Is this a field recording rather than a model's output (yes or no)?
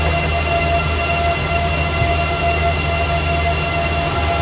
yes